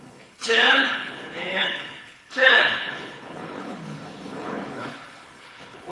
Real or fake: fake